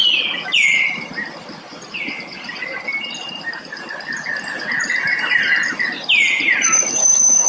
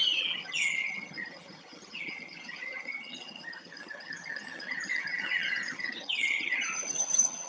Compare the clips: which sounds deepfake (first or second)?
second